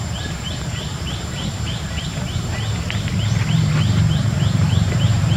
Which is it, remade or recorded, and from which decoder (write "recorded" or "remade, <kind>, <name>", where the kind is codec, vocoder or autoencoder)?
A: remade, vocoder, BigVGAN v2